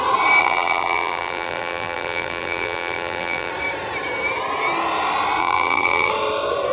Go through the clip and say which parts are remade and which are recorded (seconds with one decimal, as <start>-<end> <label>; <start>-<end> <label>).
0.0-0.4 recorded; 0.4-3.5 remade; 3.5-5.4 recorded; 5.4-6.1 remade; 6.1-6.7 recorded

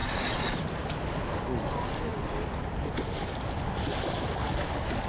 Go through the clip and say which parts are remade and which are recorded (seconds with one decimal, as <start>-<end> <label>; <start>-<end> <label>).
0.0-5.1 recorded